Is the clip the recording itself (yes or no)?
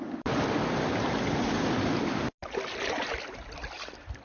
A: yes